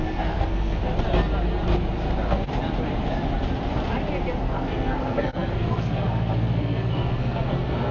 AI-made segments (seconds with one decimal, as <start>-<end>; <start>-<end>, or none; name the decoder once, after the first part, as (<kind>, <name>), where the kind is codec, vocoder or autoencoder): 0.0-0.8 (codec, SNAC); 4.4-7.9